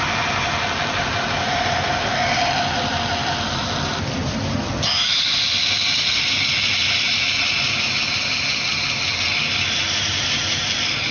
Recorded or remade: recorded